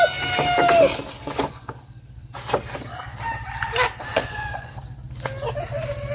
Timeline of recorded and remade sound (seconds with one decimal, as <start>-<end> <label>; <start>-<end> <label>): 0.0-1.2 recorded; 1.2-1.7 remade; 1.7-4.1 recorded; 4.1-4.7 remade; 4.7-6.1 recorded